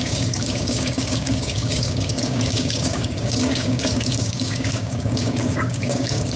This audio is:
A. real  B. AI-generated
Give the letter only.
B